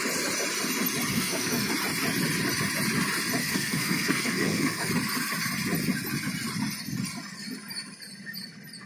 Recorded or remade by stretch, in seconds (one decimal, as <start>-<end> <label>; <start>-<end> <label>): 0.0-1.1 recorded; 1.1-1.7 remade; 1.7-3.4 recorded; 3.4-4.9 remade; 4.9-8.9 recorded